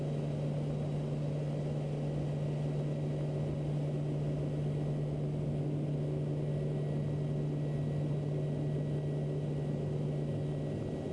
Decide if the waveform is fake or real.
real